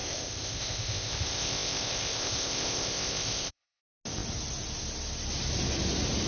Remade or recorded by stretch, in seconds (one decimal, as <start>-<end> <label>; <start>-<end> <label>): 0.0-3.8 remade; 3.8-6.3 recorded